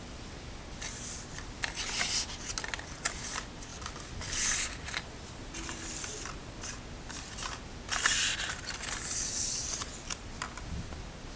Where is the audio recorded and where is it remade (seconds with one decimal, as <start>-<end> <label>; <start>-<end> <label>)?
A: 0.0-11.4 recorded